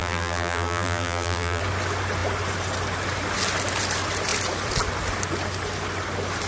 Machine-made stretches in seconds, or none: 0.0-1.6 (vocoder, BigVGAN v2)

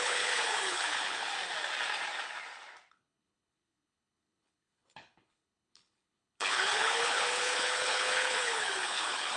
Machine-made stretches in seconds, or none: 0.0-1.3 (codec, HILCodec); 2.9-9.4

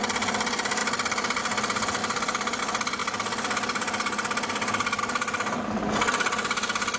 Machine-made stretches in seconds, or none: 2.0-2.6 (vocoder, BigVGAN v2)

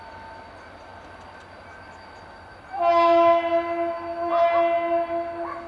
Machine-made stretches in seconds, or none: none